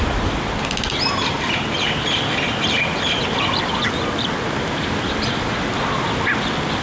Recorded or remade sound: recorded